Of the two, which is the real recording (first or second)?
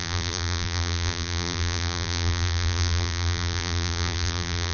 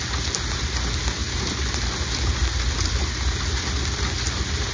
second